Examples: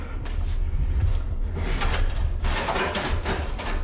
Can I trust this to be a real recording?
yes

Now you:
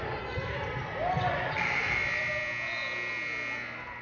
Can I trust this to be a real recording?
yes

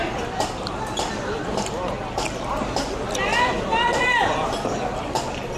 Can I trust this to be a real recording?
no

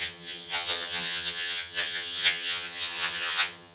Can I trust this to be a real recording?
no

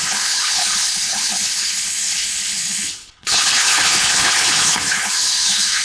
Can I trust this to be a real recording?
no